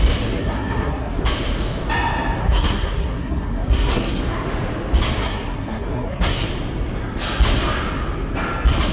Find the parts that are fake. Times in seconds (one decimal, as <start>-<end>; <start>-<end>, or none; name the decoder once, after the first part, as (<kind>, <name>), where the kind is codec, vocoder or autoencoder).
0.4-1.2 (codec, SNAC); 2.4-4.2; 5.2-6.5